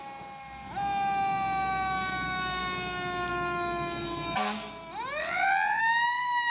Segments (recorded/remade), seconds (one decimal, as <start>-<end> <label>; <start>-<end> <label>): 0.0-5.2 recorded; 5.2-5.8 remade; 5.8-6.5 recorded